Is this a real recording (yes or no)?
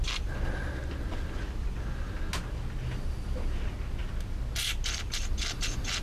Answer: yes